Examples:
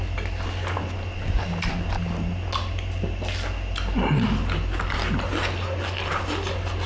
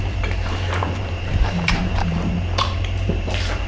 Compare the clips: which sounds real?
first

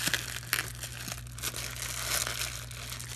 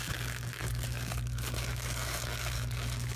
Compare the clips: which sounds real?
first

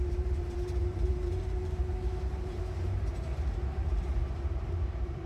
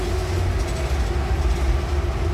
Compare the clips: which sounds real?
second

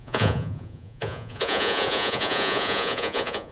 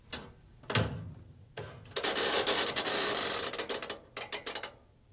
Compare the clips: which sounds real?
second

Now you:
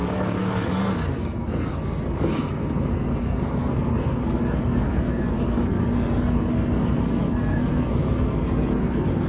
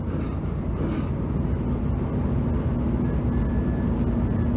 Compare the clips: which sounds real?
second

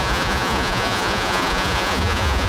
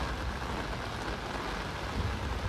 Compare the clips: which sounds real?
second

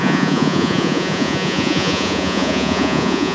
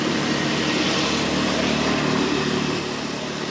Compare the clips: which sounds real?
second